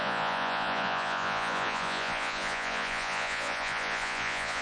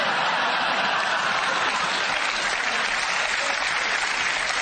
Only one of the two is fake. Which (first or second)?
first